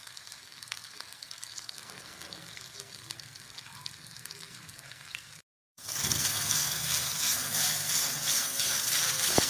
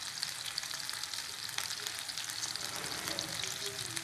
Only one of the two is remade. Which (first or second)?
first